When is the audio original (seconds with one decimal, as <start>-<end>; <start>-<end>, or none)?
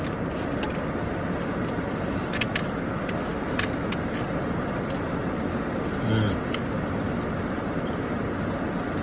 0.0-3.3; 3.9-9.0